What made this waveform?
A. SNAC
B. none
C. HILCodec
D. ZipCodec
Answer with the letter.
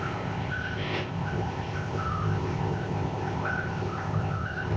D